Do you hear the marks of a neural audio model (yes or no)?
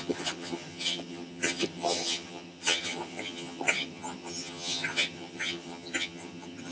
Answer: yes